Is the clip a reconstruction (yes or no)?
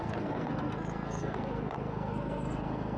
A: yes